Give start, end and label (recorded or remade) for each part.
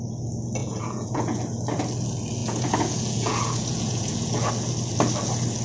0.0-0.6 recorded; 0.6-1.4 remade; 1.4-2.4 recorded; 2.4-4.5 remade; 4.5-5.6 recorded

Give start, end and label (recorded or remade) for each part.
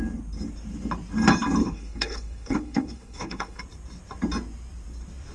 0.0-1.6 recorded; 1.6-3.6 remade; 3.6-5.3 recorded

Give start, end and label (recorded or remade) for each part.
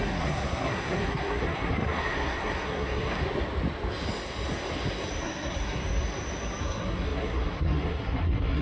0.0-3.2 remade; 3.2-5.2 recorded; 5.2-5.8 remade; 5.8-6.6 recorded; 6.6-8.6 remade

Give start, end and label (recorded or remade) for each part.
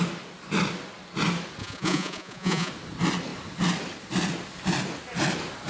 0.0-1.6 recorded; 1.6-2.7 remade; 2.7-5.7 recorded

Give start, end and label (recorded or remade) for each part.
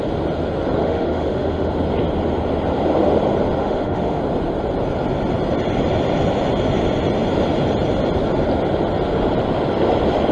0.0-0.8 recorded; 0.8-1.7 remade; 1.7-3.6 recorded; 3.6-4.2 remade; 4.2-10.3 recorded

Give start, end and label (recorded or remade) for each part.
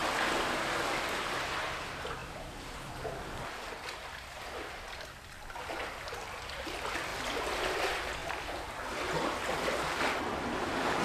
0.0-2.2 recorded; 2.2-2.9 remade; 2.9-11.0 recorded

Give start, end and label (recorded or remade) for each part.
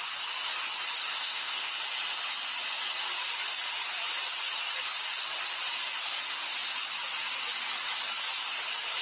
0.0-1.1 recorded; 1.1-1.7 remade; 1.7-9.0 recorded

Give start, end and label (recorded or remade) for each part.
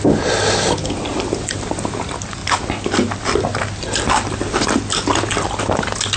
0.0-6.2 recorded